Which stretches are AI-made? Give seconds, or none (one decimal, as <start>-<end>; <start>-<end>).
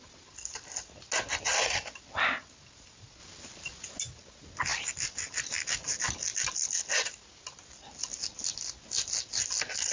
3.2-4.0